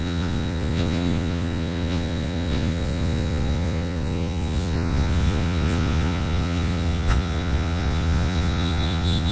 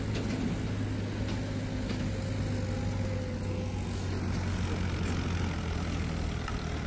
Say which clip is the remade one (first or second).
first